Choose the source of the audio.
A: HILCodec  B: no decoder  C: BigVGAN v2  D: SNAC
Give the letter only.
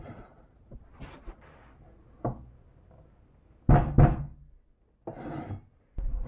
B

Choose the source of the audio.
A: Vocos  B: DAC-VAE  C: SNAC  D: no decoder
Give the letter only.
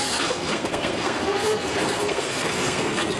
C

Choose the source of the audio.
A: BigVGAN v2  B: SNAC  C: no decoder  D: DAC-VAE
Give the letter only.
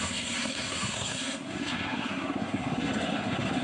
B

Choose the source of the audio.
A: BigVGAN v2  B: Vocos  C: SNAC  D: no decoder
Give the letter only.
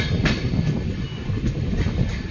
D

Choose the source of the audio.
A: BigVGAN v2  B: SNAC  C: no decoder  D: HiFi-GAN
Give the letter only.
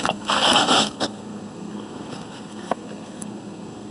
B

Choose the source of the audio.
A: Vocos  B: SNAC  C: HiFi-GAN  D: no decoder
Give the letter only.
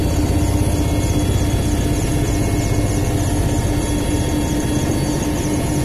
D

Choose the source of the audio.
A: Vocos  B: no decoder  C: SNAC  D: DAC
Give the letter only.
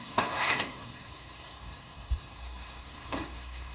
C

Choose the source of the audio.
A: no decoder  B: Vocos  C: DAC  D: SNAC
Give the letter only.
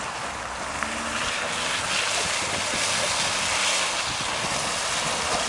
A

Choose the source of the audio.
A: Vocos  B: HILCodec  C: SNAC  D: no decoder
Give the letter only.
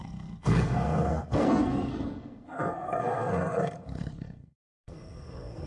C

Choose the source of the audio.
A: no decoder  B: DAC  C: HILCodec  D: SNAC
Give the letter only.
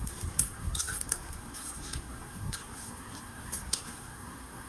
D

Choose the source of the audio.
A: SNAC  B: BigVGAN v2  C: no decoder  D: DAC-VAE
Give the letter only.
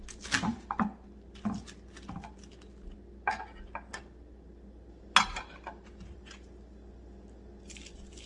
C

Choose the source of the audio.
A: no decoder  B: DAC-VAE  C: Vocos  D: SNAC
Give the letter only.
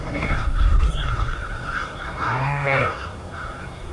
D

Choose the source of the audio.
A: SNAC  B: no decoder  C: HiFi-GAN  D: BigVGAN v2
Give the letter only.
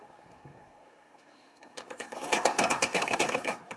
A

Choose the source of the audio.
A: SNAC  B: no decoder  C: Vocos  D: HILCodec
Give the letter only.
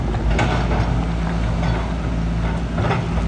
B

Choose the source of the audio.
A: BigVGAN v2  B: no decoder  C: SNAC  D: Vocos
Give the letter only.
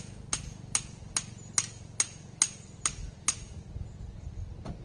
B